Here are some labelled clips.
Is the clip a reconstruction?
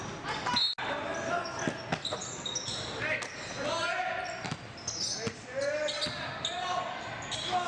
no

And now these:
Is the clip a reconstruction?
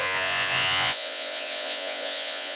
yes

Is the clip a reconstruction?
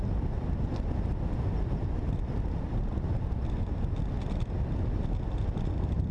no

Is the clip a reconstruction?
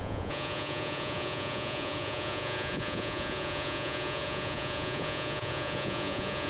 yes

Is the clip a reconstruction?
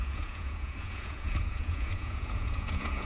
yes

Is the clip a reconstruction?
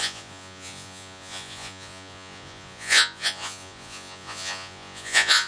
yes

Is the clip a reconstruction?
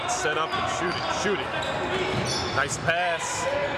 no